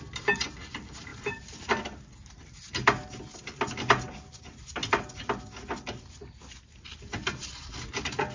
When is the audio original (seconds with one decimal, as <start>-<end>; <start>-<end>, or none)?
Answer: 0.0-8.3

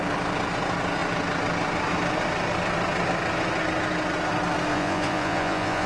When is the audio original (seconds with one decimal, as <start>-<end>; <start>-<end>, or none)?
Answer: 0.0-4.7

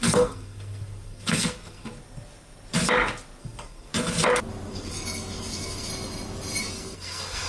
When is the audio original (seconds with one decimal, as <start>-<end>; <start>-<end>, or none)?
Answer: 1.9-3.4; 3.9-4.7; 5.9-6.6

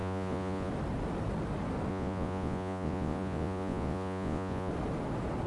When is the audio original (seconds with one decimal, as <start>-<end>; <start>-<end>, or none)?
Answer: 0.7-1.9; 4.7-5.5

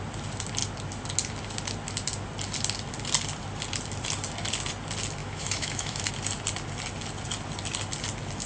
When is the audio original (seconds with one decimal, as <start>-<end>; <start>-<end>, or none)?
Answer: 0.0-5.2; 6.1-8.5

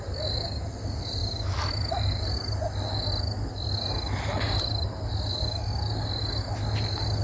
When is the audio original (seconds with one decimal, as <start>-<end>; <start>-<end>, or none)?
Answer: 0.0-7.2